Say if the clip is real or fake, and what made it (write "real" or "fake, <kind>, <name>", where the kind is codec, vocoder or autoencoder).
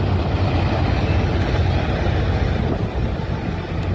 real